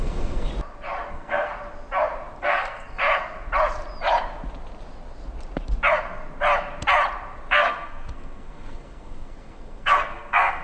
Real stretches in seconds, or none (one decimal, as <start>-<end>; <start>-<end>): 0.5-1.1; 1.5-2.4; 3.0-7.5